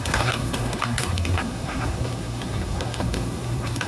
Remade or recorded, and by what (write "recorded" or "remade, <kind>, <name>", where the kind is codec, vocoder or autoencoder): remade, codec, SNAC